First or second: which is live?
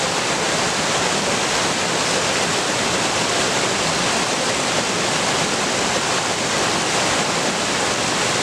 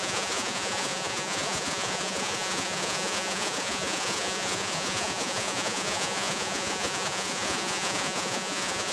first